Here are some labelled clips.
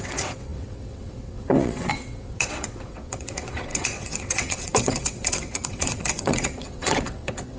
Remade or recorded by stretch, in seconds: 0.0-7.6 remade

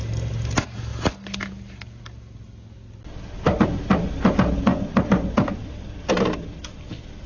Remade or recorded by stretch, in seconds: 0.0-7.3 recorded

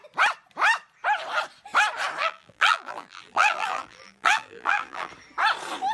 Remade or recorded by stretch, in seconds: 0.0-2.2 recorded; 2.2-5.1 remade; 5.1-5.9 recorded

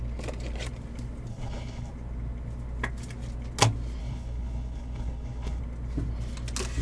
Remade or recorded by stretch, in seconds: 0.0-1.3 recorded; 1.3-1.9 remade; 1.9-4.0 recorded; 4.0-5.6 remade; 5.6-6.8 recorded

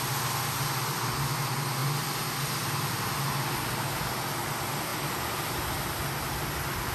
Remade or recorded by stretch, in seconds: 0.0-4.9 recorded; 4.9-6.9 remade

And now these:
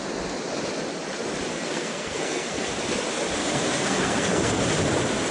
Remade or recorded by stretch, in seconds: 0.0-1.5 recorded; 1.5-2.7 remade; 2.7-3.4 recorded; 3.4-4.6 remade; 4.6-5.3 recorded

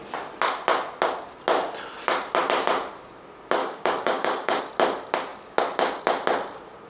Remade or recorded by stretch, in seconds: 0.0-3.6 recorded; 3.6-4.6 remade; 4.6-6.9 recorded

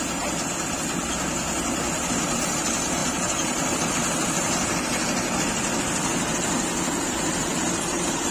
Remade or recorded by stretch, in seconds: 0.0-3.0 recorded; 3.0-3.9 remade; 3.9-7.5 recorded; 7.5-8.3 remade